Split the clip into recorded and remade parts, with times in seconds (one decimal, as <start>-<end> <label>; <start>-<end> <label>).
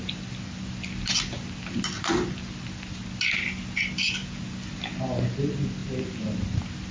0.0-6.9 recorded